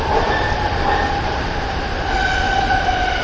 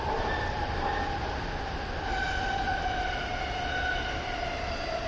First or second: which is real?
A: second